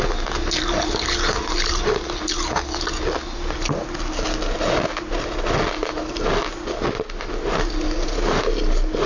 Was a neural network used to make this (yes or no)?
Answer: no